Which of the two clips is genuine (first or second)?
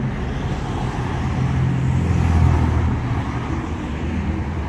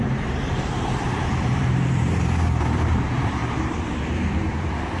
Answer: first